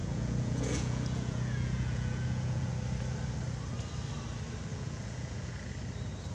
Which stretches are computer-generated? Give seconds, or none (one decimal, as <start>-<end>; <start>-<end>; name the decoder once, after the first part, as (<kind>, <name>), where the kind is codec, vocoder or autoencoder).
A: 0.0-2.7 (vocoder, Vocos); 4.7-5.7